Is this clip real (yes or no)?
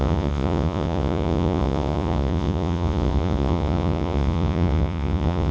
no